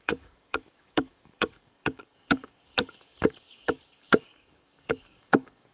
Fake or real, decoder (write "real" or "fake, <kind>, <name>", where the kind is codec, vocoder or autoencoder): fake, codec, DAC